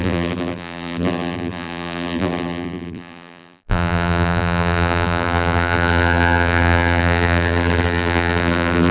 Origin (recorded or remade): remade